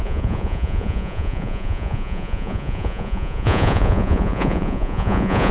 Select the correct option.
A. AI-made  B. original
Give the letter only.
A